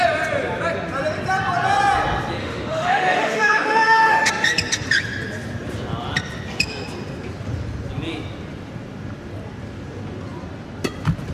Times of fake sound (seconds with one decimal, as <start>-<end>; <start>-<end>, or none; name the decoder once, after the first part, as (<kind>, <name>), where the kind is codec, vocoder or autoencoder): 2.4-4.3 (autoencoder, DAC-VAE)